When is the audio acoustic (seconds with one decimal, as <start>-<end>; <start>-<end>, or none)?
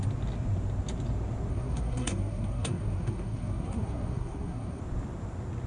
0.0-1.5; 4.8-5.7